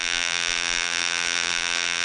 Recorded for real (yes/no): no